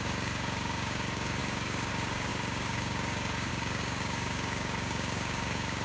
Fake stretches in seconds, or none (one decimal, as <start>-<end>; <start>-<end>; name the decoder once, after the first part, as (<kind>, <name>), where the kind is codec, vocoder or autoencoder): 0.0-5.8 (codec, DAC)